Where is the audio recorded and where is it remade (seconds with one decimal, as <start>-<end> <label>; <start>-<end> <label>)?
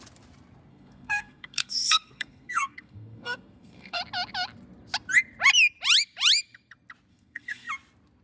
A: 0.0-0.7 recorded; 0.7-4.0 remade; 4.0-7.1 recorded; 7.1-7.7 remade; 7.7-8.2 recorded